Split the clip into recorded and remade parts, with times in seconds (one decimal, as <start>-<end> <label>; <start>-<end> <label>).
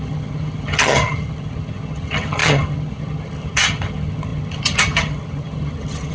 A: 0.0-6.1 remade